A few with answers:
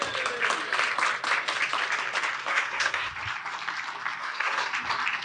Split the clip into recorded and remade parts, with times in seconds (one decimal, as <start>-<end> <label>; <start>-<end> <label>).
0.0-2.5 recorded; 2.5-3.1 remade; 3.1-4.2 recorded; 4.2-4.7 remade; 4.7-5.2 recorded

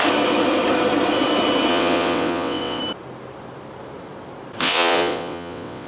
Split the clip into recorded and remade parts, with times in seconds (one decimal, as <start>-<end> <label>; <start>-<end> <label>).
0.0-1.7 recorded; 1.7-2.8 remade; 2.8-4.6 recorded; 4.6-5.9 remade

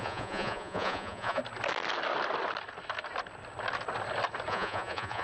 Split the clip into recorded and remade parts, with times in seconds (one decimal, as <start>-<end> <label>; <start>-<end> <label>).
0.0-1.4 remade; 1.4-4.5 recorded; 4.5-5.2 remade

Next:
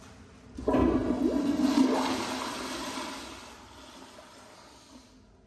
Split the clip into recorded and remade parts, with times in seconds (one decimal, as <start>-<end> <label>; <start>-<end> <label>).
0.0-5.5 recorded